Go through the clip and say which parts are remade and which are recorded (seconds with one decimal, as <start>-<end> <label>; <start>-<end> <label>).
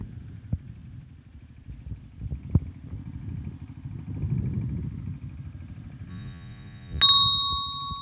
0.0-6.1 recorded; 6.1-7.0 remade; 7.0-8.0 recorded